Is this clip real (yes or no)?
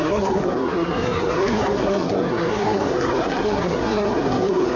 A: no